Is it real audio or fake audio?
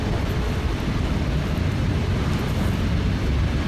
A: real